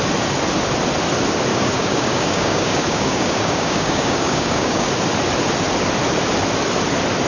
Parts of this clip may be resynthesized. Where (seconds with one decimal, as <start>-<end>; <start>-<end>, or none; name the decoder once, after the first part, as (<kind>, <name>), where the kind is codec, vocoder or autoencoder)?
1.5-4.9 (codec, DAC)